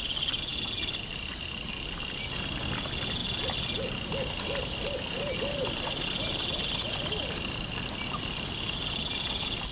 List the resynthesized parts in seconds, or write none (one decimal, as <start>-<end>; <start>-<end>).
none